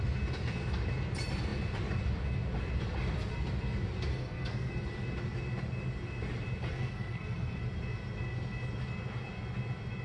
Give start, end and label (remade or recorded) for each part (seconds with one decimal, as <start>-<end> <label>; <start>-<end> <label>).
0.0-4.1 recorded; 4.1-4.7 remade; 4.7-6.7 recorded; 6.7-7.6 remade; 7.6-10.0 recorded